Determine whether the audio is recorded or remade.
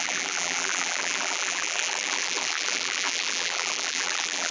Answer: remade